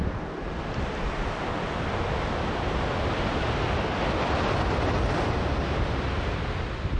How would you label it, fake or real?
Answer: real